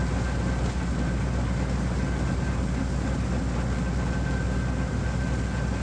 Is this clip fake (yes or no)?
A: no